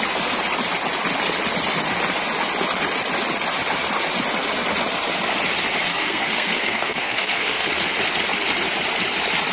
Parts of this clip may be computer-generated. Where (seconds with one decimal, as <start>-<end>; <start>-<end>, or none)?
5.9-7.7